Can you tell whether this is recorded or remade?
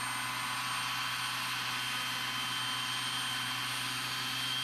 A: recorded